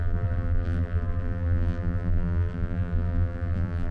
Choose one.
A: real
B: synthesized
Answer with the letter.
B